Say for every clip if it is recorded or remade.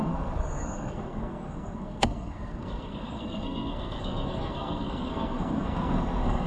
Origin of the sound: remade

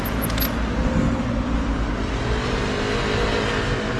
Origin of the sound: recorded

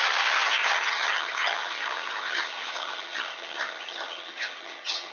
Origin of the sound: remade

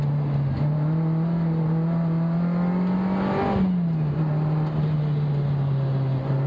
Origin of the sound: recorded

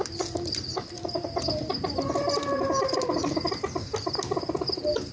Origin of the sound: recorded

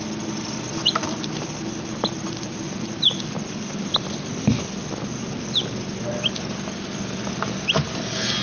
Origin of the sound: recorded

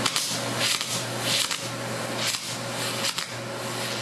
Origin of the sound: recorded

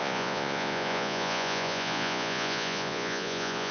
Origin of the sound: remade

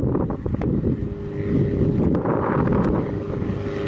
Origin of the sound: recorded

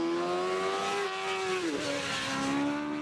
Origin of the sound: recorded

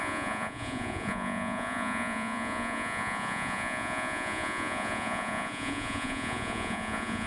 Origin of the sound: remade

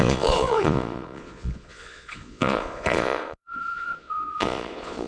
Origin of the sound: remade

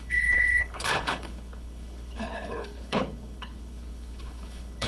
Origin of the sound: remade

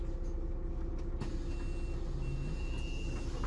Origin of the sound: recorded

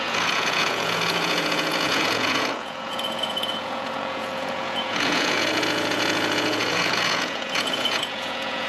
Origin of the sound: remade